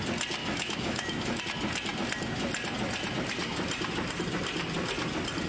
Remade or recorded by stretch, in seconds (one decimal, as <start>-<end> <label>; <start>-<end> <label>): 0.0-0.4 recorded; 0.4-1.4 remade; 1.4-5.5 recorded